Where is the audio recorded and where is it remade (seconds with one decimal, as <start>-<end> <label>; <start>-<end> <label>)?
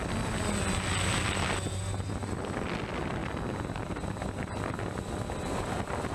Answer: 0.0-6.1 recorded